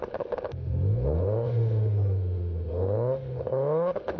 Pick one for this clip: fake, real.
fake